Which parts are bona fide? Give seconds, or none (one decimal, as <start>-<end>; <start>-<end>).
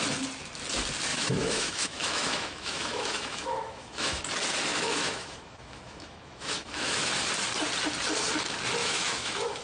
0.0-1.1; 4.2-4.7; 7.1-8.8